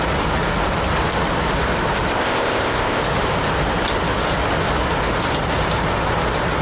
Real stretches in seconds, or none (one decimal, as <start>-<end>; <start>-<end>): 0.0-2.1; 3.0-6.6